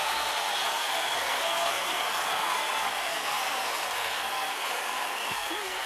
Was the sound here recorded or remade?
remade